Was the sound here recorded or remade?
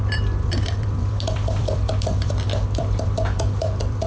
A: remade